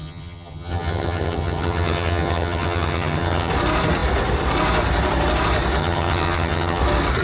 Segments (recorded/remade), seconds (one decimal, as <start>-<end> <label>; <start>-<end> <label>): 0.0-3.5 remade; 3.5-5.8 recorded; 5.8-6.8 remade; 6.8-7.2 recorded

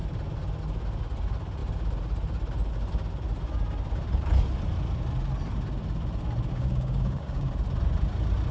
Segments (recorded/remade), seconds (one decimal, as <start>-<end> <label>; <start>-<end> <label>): 0.0-6.5 recorded; 6.5-7.5 remade; 7.5-8.5 recorded

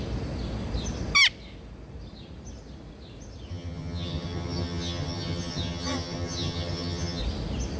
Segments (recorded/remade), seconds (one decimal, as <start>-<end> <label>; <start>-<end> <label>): 0.0-3.5 recorded; 3.5-7.2 remade; 7.2-7.8 recorded

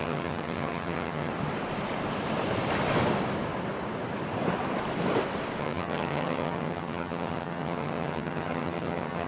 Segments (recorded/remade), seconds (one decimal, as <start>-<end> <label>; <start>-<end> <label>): 0.0-1.3 remade; 1.3-5.6 recorded; 5.6-9.3 remade